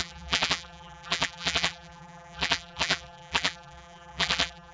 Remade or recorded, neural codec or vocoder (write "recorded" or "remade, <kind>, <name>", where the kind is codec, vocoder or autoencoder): remade, vocoder, BigVGAN v2